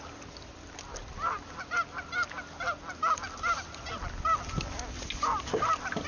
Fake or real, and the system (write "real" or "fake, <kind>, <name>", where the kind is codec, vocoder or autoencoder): real